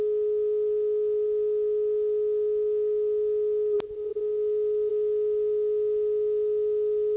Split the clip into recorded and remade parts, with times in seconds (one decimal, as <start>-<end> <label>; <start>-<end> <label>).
0.0-7.2 recorded